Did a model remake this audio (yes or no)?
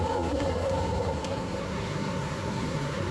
yes